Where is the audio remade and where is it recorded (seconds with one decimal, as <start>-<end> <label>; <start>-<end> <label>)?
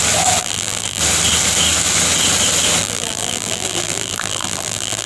0.0-0.4 recorded; 0.4-1.0 remade; 1.0-2.8 recorded; 2.8-5.1 remade